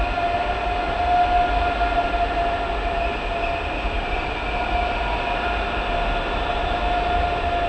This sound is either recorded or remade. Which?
recorded